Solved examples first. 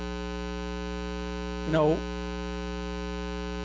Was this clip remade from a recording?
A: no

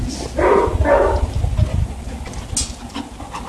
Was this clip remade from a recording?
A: no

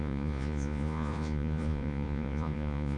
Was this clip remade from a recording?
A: yes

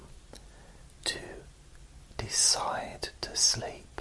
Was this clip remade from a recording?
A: no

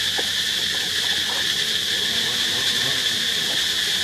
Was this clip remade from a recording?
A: no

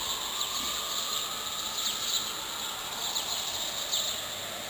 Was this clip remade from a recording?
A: no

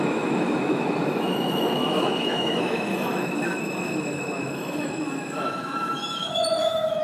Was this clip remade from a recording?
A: yes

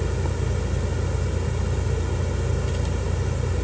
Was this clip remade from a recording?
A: no